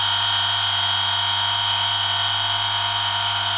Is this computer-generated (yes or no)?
no